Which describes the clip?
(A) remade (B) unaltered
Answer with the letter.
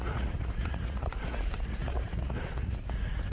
A